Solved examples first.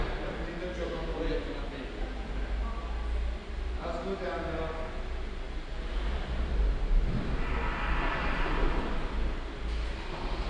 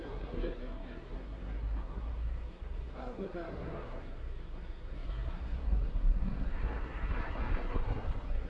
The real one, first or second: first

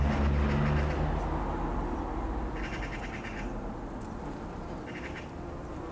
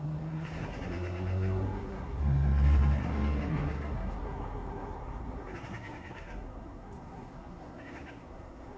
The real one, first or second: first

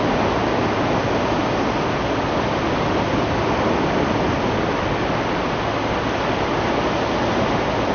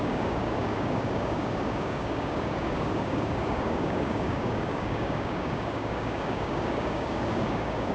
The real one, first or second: first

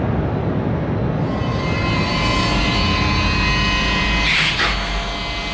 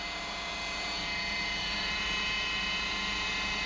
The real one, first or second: first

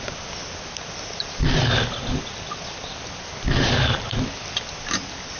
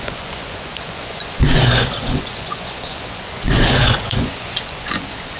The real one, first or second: first